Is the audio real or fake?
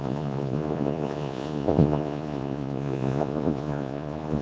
fake